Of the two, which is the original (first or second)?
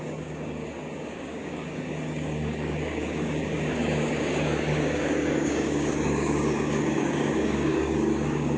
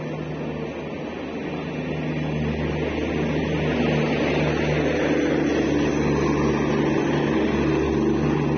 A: second